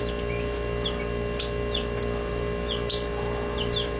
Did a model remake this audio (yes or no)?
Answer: no